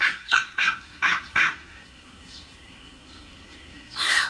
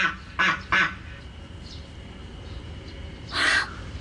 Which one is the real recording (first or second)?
second